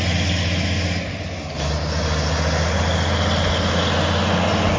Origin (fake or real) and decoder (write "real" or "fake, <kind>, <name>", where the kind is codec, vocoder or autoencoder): real